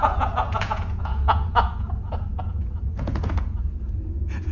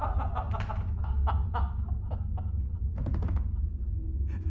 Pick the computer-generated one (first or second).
first